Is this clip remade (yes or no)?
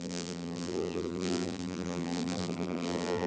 yes